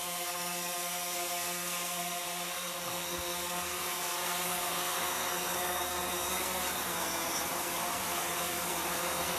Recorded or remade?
remade